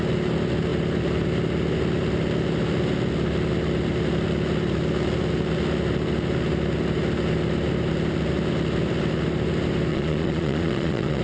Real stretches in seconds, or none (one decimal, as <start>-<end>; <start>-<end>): 0.0-9.9